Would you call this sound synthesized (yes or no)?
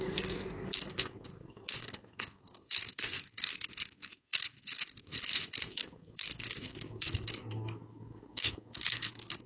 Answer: yes